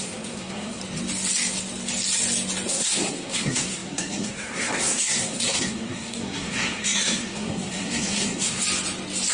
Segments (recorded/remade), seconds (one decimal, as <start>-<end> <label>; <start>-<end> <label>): 0.0-0.8 remade; 0.8-2.7 recorded; 2.7-8.6 remade; 8.6-9.3 recorded